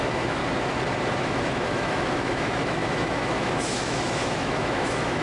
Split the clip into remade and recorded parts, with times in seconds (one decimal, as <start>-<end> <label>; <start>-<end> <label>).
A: 0.0-0.4 remade; 0.4-1.2 recorded; 1.2-5.2 remade